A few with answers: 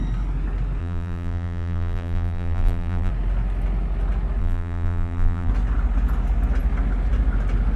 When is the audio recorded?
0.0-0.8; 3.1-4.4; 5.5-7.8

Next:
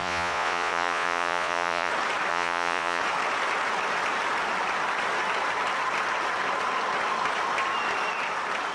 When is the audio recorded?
1.9-2.3; 3.0-8.7

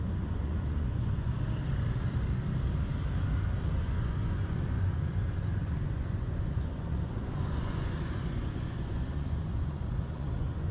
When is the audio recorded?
1.3-3.8

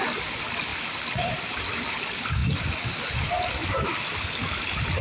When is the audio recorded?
0.0-5.0

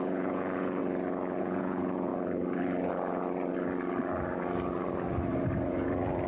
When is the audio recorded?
0.8-1.4; 2.1-6.3

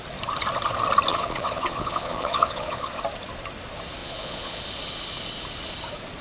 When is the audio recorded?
0.0-1.1; 3.0-4.0; 4.6-6.2

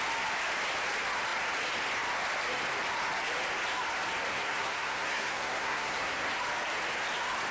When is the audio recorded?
0.0-4.3; 6.3-7.5

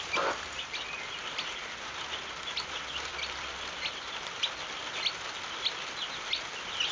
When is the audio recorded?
0.0-3.1; 4.4-6.9